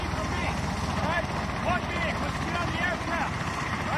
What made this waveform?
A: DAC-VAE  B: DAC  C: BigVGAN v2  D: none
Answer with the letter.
C